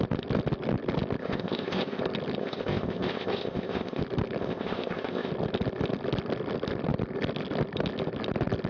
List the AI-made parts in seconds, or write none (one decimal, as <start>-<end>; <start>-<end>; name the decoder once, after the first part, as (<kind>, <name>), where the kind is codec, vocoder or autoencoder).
1.2-2.0 (codec, ZipCodec); 2.4-4.0; 4.4-5.3